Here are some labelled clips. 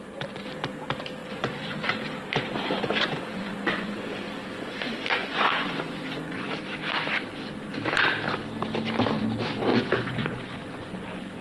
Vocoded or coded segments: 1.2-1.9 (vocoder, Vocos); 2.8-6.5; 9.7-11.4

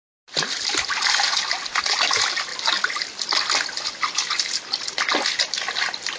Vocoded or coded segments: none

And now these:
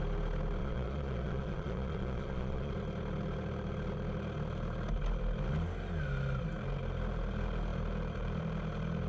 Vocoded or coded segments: 0.6-2.7 (vocoder, Vocos)